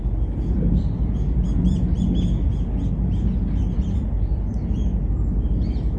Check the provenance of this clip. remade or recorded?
recorded